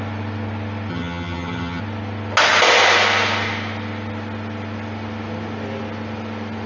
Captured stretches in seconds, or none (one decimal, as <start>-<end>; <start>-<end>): 0.0-0.9; 1.8-6.7